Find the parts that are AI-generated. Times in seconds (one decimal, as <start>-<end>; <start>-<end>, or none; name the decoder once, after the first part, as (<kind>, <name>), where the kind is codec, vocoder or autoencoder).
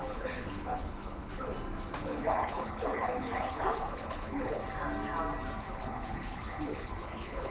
0.0-1.5 (codec, HILCodec); 2.0-4.6; 5.6-7.5